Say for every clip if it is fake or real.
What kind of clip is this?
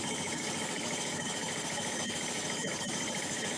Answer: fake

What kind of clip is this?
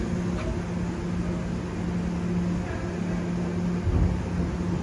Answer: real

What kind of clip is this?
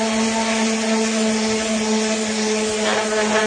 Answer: real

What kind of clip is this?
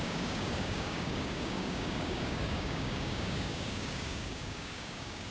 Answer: fake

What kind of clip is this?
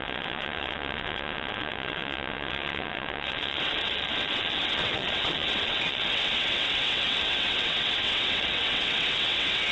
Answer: fake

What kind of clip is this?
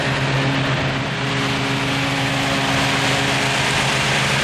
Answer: real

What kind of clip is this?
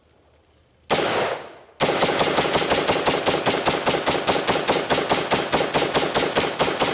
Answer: real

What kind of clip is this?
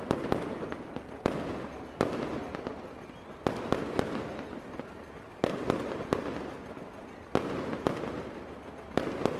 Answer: real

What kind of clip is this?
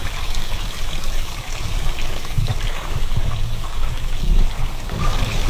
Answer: fake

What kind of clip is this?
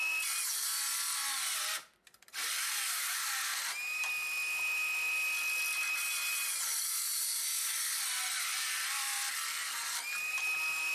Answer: real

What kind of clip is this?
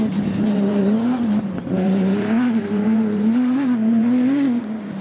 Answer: fake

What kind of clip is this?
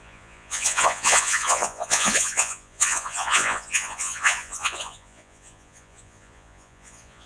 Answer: fake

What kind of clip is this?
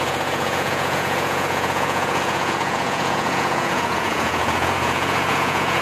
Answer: fake